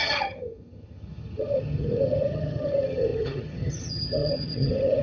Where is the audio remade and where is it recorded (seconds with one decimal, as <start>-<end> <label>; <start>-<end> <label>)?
0.0-5.0 remade